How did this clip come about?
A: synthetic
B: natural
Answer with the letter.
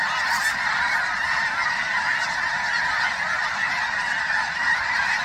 B